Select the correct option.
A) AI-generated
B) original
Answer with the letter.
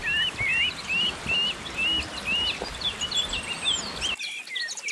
B